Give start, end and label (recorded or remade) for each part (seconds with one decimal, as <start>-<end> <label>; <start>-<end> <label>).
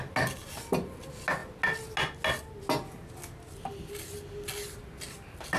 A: 0.0-5.6 recorded